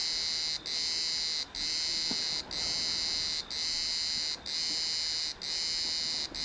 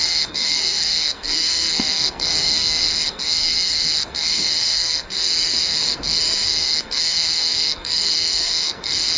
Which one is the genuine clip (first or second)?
first